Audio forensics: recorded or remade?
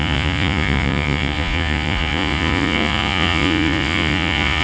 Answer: remade